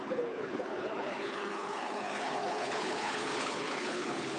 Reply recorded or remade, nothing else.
remade